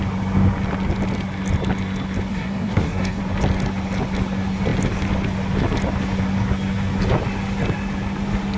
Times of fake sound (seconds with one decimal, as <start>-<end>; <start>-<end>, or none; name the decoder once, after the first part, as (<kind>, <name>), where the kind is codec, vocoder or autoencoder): 2.3-3.2 (codec, SNAC)